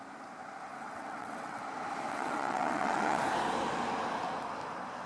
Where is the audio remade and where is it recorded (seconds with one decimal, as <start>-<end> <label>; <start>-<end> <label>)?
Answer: 0.0-0.7 recorded; 0.7-1.6 remade; 1.6-2.1 recorded; 2.1-3.2 remade; 3.2-5.1 recorded